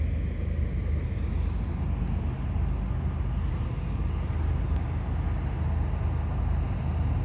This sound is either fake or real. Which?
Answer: real